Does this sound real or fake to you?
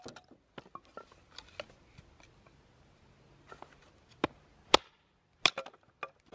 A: real